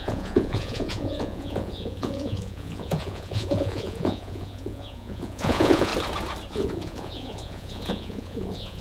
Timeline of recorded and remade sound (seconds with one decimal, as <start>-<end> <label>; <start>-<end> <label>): 0.0-5.9 remade; 5.9-6.5 recorded; 6.5-8.8 remade